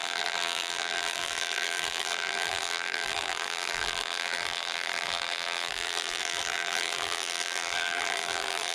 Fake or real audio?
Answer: fake